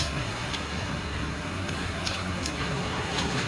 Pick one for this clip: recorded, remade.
remade